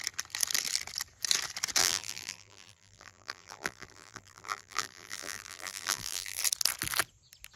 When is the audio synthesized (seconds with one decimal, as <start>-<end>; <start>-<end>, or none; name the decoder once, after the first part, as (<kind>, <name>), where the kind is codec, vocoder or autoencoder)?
1.8-6.4 (vocoder, BigVGAN v2)